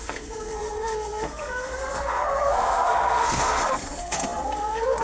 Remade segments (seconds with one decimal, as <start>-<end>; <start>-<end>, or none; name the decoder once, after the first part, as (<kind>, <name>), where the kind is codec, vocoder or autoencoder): 0.0-5.0 (codec, SNAC)